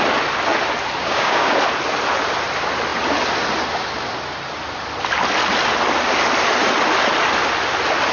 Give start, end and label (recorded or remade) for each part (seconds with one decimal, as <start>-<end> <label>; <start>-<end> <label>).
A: 0.0-1.0 recorded; 1.0-1.5 remade; 1.5-8.1 recorded